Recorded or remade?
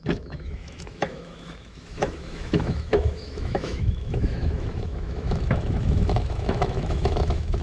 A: remade